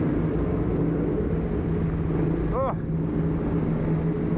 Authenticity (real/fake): real